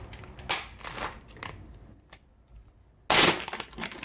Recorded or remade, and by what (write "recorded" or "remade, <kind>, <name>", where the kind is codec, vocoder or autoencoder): recorded